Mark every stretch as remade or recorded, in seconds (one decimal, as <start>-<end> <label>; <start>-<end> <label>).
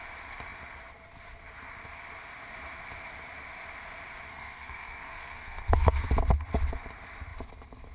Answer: 0.0-4.3 recorded; 4.3-6.1 remade; 6.1-7.9 recorded